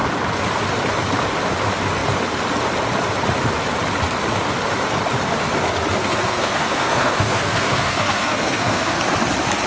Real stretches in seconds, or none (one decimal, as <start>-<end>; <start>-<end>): 0.0-6.0; 9.0-9.7